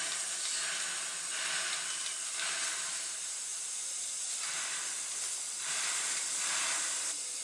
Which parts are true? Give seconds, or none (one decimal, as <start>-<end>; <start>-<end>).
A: 0.0-7.4